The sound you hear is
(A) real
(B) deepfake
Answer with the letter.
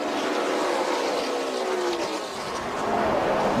A